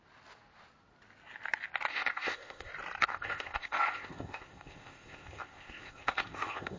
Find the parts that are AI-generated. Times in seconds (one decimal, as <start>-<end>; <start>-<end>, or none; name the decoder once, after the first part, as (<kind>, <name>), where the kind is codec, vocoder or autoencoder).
1.9-2.7 (codec, ZipCodec); 3.1-6.8

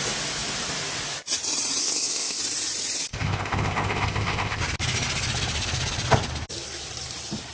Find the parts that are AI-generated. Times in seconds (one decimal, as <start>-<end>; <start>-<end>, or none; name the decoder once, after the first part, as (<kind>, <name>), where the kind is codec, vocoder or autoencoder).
1.8-2.4 (codec, ZipCodec); 3.1-4.6

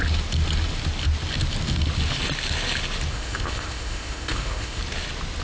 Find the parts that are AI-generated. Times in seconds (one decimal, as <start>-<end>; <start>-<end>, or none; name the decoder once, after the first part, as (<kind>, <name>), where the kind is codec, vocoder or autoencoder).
3.1-4.8 (codec, ZipCodec)

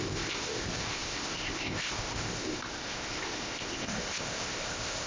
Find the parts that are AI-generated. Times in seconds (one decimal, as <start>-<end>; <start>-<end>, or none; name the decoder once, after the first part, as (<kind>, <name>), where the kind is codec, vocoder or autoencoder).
0.0-5.1 (codec, ZipCodec)